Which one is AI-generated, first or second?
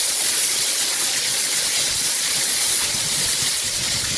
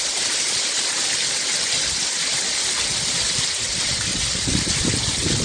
first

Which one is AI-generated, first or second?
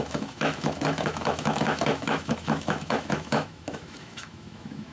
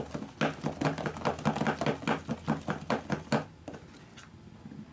first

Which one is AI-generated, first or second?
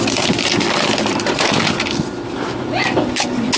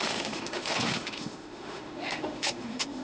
second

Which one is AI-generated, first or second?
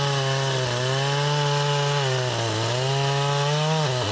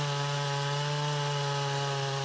second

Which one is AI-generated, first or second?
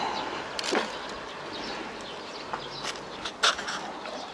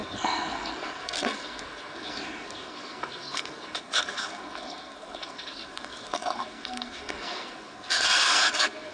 second